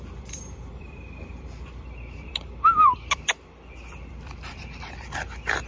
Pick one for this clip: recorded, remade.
remade